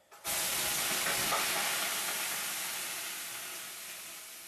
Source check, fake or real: real